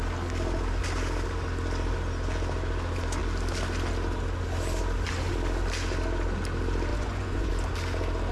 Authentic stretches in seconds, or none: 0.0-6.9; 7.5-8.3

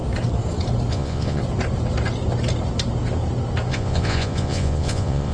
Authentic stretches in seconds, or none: 0.0-0.9; 1.4-3.7

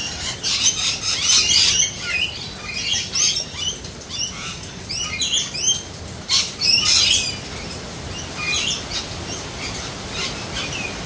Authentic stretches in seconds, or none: 0.0-11.1

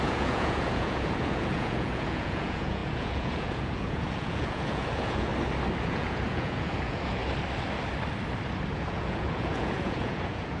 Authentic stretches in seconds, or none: 5.3-5.8; 7.2-8.7

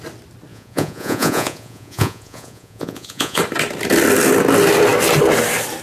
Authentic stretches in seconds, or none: 0.0-0.5; 3.4-5.8